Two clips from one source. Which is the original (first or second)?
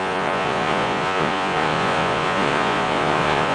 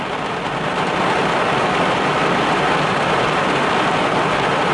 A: second